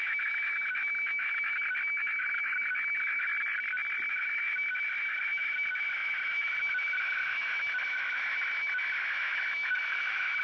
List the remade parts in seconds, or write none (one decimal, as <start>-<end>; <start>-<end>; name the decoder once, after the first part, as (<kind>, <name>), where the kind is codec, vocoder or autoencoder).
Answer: 0.0-3.3 (autoencoder, DAC-VAE); 4.1-10.4